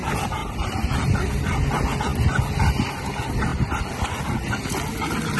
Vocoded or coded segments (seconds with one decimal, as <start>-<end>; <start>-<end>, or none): 0.4-1.1